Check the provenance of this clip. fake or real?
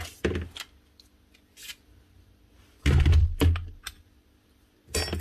real